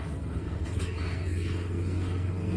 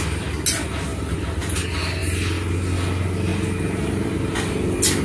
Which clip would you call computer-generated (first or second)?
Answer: first